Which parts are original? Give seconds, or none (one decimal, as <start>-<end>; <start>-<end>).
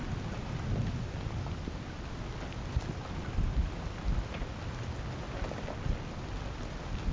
0.0-7.1